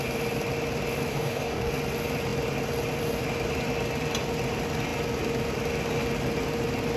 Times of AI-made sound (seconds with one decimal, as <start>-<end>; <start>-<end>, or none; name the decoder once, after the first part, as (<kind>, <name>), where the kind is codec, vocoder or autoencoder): 1.1-1.7 (codec, DAC)